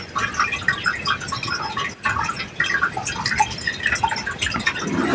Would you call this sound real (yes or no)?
yes